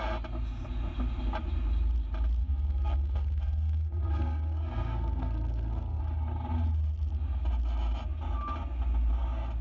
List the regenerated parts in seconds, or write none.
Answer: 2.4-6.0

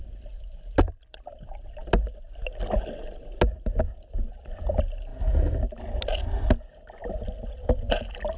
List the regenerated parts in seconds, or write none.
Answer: none

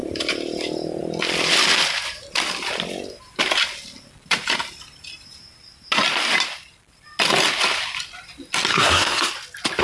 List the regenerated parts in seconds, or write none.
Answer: 8.7-9.3

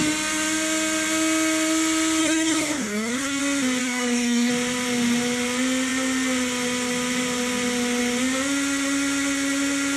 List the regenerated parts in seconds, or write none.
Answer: 2.2-3.4; 3.8-4.5